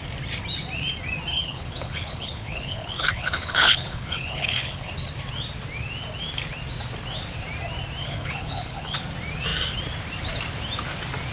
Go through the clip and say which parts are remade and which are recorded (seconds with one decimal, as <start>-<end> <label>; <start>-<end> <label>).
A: 0.0-1.3 recorded; 1.3-4.9 remade; 4.9-8.0 recorded; 8.0-9.0 remade; 9.0-11.3 recorded